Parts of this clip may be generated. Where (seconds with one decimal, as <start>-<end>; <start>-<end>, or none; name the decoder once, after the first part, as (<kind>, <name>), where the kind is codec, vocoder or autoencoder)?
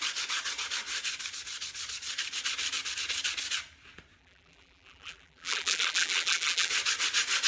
4.2-6.7 (vocoder, BigVGAN v2)